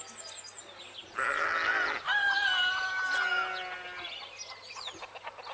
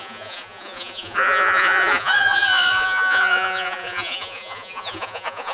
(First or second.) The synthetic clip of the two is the second